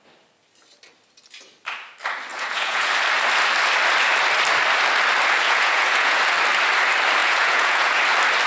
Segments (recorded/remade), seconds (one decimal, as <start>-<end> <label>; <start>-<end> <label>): 0.0-2.3 recorded; 2.3-2.9 remade; 2.9-5.4 recorded; 5.4-6.2 remade; 6.2-7.2 recorded; 7.2-8.0 remade; 8.0-8.5 recorded